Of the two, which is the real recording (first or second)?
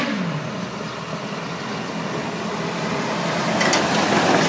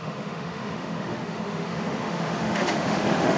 first